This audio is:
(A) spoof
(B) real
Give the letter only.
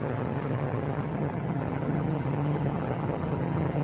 A